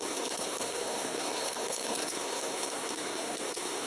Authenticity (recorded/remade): remade